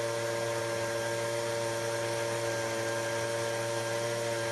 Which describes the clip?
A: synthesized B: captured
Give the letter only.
B